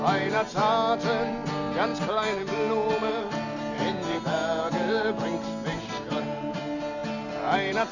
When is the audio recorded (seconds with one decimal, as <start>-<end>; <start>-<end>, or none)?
0.6-1.3; 1.9-3.1